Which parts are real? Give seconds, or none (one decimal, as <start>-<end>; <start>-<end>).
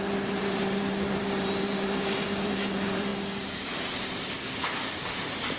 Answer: 3.1-3.8